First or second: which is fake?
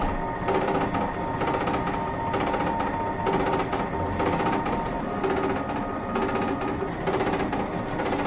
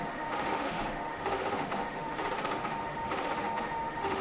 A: second